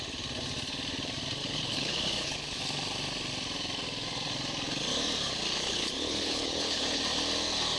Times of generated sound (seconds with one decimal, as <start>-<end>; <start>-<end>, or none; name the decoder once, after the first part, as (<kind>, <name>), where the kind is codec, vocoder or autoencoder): 1.4-2.6 (codec, HILCodec); 5.5-7.0